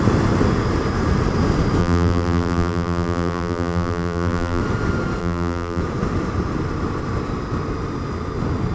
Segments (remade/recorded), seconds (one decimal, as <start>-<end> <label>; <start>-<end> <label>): 0.0-1.8 recorded; 1.8-4.6 remade; 4.6-5.2 recorded; 5.2-5.8 remade; 5.8-8.7 recorded